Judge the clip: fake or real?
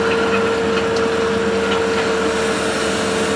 real